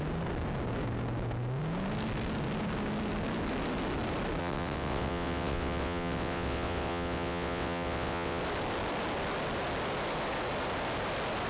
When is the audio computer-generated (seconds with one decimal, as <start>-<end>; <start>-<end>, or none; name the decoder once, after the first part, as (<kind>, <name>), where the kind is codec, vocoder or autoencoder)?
4.4-8.4 (vocoder, WaveNeXt)